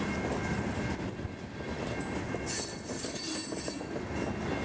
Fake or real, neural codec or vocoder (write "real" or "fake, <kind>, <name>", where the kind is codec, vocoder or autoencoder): real